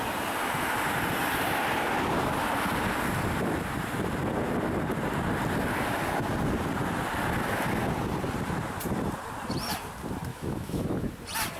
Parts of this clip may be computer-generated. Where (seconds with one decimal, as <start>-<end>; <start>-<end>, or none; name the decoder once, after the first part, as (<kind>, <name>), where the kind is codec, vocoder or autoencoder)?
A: 10.3-11.1 (autoencoder, DAC-VAE)